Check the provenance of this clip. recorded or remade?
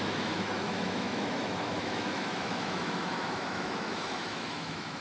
remade